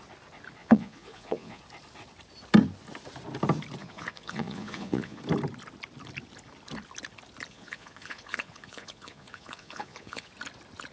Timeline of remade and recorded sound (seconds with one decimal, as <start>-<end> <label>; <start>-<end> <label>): 0.0-0.6 recorded; 0.6-1.6 remade; 1.6-3.8 recorded; 3.8-5.2 remade; 5.2-7.5 recorded; 7.5-10.3 remade; 10.3-10.9 recorded